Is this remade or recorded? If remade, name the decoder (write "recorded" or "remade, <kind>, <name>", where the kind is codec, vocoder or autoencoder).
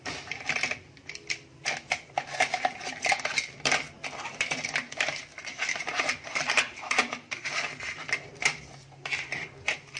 recorded